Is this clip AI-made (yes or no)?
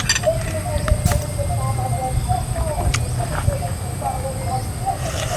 no